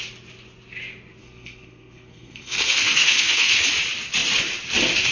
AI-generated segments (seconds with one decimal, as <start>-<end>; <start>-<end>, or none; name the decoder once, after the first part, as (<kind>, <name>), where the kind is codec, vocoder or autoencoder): 1.2-3.6 (codec, SNAC)